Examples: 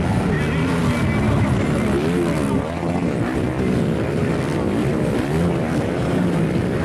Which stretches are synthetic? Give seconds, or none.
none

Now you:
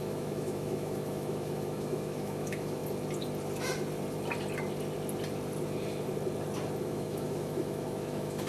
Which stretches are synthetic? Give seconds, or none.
0.0-2.8 (autoencoder, DAC-VAE); 6.8-8.5

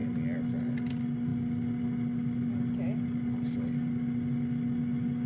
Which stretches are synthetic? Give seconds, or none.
none